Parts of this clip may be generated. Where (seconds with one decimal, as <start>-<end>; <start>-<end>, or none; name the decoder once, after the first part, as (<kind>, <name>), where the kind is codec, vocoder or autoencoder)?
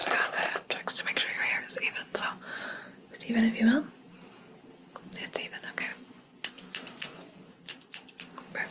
2.1-3.3 (vocoder, Vocos); 5.9-7.5